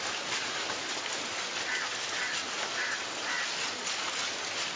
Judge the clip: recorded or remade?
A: recorded